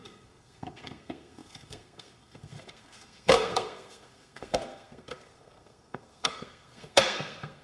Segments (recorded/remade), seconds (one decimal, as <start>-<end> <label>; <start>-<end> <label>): 0.0-7.6 remade